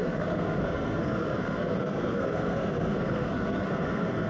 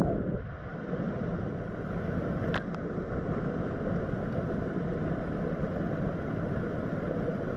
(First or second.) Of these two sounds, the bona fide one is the second